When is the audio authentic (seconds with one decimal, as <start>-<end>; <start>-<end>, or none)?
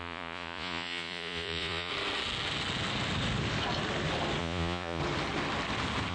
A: 1.9-4.4; 5.0-6.1